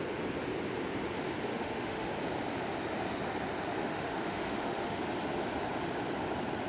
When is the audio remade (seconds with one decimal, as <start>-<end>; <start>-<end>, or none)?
1.5-2.1; 3.8-5.0